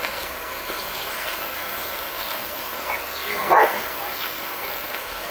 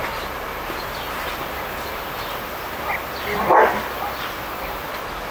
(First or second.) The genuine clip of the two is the second